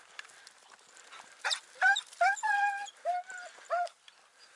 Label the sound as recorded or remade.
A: recorded